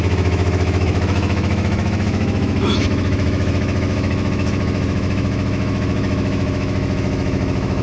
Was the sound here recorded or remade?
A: remade